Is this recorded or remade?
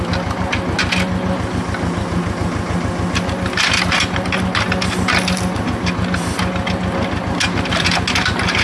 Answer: recorded